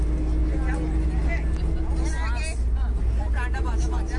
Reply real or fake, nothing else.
real